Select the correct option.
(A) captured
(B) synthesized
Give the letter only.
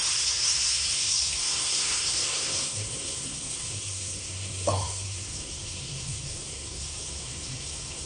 B